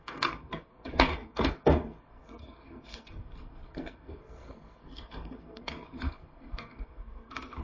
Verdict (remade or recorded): remade